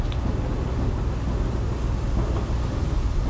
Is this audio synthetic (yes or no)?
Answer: no